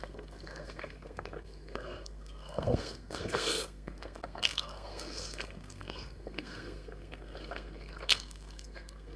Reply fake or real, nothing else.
fake